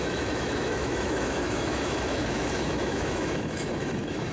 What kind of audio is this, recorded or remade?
remade